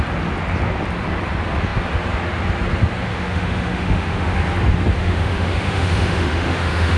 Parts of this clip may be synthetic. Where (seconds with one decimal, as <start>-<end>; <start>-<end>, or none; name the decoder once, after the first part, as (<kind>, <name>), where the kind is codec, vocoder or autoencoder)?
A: 3.1-4.4 (autoencoder, DAC-VAE); 5.0-7.0